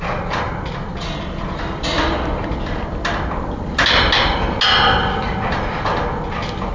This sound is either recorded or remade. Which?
recorded